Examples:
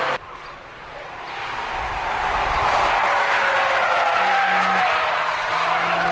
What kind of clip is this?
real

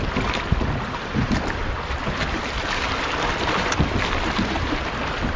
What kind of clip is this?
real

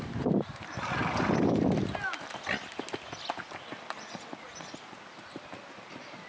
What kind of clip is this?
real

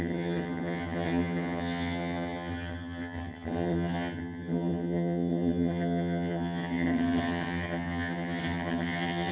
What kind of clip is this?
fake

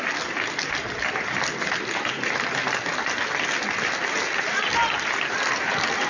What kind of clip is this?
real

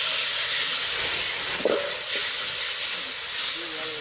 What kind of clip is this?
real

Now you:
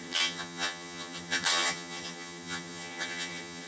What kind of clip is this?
fake